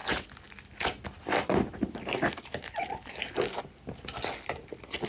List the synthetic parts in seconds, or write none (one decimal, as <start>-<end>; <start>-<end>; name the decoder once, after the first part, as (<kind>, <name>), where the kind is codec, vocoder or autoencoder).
none